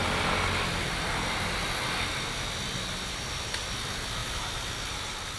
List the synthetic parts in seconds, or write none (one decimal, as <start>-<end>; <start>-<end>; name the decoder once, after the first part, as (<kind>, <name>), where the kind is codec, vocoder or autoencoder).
none